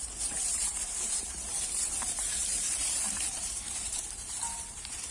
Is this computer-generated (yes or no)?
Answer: yes